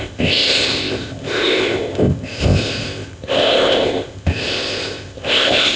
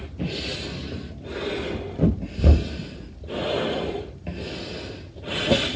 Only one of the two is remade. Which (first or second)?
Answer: first